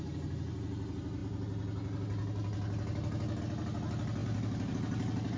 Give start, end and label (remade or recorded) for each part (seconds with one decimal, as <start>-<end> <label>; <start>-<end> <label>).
0.0-4.2 recorded; 4.2-4.7 remade; 4.7-5.4 recorded